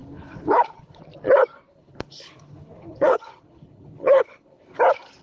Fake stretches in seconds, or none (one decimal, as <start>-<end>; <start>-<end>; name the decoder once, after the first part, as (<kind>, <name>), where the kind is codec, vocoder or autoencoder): 0.0-1.0 (codec, HILCodec); 1.7-4.8